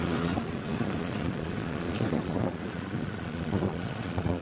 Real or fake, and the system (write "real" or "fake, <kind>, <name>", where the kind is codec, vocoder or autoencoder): fake, vocoder, Vocos